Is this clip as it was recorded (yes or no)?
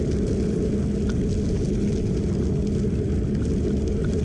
yes